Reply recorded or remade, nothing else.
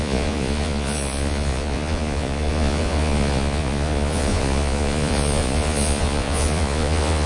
remade